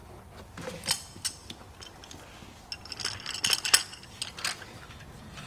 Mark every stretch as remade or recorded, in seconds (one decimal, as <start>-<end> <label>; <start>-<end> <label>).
0.0-5.5 recorded